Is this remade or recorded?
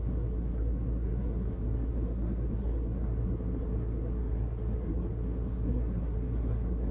remade